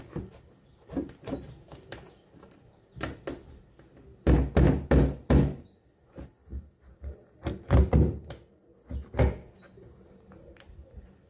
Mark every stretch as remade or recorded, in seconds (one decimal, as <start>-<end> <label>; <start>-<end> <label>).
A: 0.0-11.3 recorded